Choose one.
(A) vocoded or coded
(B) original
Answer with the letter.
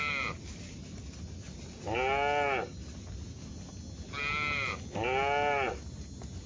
B